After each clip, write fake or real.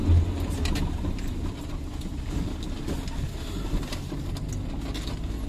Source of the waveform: real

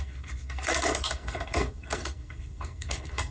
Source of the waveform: fake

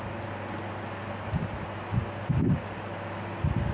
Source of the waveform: real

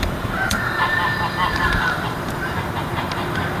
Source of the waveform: fake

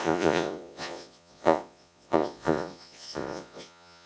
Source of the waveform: fake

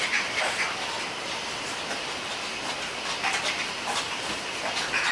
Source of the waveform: real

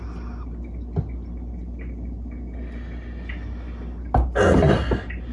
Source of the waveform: real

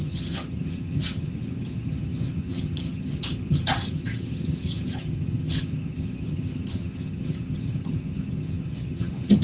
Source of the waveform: fake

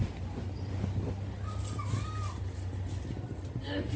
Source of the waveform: real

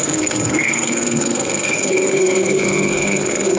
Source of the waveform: fake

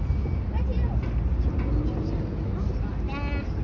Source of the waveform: real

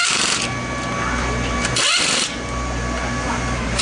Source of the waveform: real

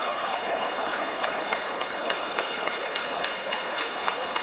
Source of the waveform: fake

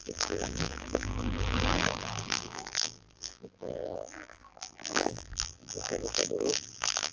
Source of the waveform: fake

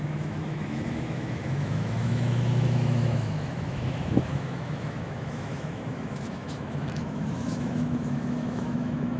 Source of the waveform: fake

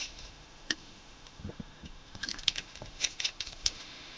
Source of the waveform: fake